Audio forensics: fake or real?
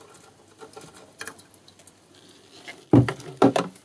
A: real